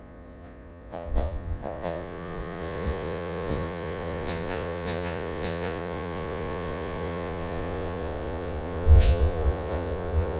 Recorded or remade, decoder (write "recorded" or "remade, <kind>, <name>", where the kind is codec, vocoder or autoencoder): remade, vocoder, Vocos